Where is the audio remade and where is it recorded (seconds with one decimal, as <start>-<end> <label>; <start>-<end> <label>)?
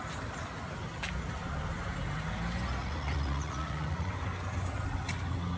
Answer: 0.0-2.8 recorded; 2.8-4.1 remade; 4.1-5.6 recorded